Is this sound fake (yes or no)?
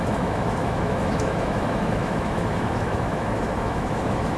yes